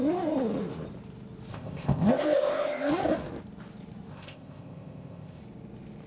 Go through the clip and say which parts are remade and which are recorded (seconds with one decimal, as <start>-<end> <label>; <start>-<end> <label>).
0.0-1.5 recorded; 1.5-2.9 remade; 2.9-4.1 recorded; 4.1-5.4 remade; 5.4-6.1 recorded